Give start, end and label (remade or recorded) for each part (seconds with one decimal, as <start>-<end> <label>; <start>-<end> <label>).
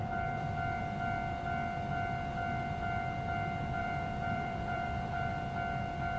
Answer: 0.0-0.8 remade; 0.8-3.8 recorded; 3.8-5.3 remade; 5.3-6.2 recorded